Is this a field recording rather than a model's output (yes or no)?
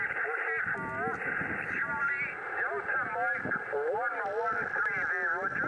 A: yes